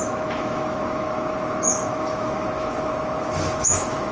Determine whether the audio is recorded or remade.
remade